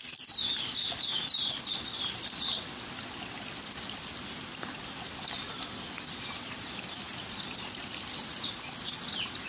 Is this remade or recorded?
recorded